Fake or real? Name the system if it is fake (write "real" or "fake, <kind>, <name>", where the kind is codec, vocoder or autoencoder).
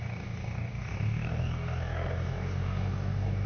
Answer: fake, codec, DAC